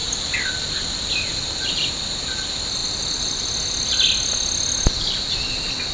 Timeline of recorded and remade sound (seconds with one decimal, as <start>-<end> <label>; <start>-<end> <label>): 0.0-5.9 recorded